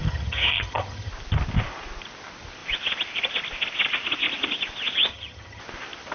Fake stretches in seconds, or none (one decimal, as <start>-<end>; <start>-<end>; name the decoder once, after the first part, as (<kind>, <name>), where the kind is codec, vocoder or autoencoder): 0.0-1.1 (vocoder, HiFi-GAN); 5.1-5.6